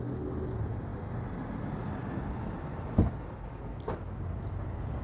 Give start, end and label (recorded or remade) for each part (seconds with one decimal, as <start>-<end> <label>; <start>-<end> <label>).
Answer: 0.0-5.0 recorded